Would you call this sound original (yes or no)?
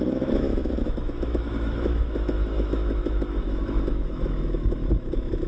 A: no